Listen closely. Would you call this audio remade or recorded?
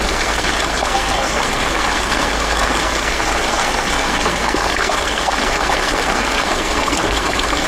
remade